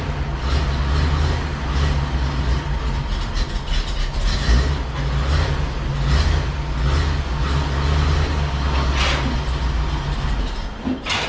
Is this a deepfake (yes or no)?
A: no